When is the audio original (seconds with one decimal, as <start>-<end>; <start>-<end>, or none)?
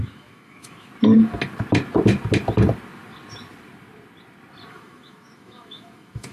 0.9-4.7